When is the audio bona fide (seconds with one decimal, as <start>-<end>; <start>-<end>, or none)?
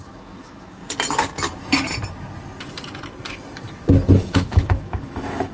0.8-4.1